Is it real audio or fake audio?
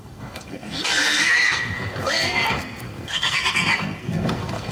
fake